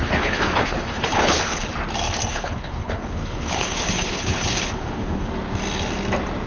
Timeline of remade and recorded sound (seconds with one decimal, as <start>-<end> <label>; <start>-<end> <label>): 0.0-1.7 remade; 1.7-2.3 recorded; 2.3-5.3 remade; 5.3-6.5 recorded